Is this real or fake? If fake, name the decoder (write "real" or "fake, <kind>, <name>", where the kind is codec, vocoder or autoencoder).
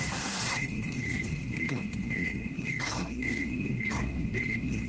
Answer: fake, codec, SNAC